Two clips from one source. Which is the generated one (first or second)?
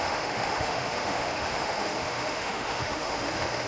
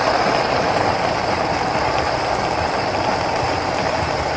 first